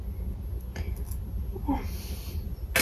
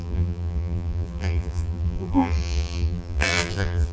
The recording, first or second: first